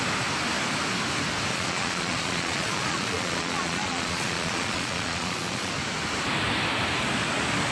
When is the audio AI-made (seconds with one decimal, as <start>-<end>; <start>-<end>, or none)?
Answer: 1.5-5.7